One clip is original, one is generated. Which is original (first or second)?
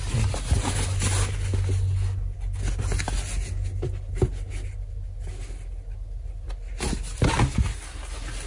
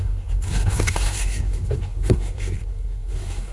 first